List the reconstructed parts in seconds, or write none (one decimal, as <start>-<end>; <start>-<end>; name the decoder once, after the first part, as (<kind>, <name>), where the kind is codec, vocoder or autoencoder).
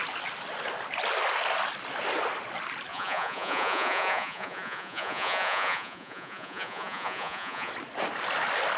2.9-7.7 (vocoder, Vocos)